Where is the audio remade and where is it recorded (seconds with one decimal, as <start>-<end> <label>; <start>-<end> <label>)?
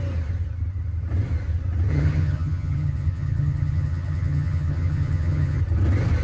0.0-1.9 recorded; 1.9-5.6 remade; 5.6-6.2 recorded